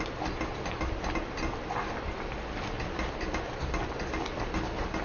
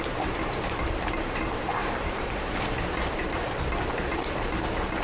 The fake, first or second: second